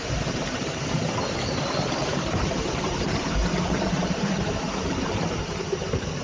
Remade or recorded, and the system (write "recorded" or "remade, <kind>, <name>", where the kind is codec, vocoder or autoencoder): remade, vocoder, BigVGAN v2